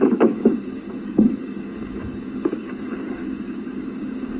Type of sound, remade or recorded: remade